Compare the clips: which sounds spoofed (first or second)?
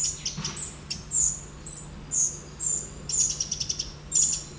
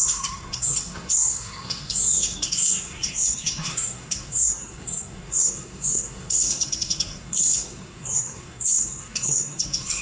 second